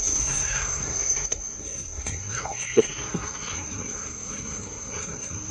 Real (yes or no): no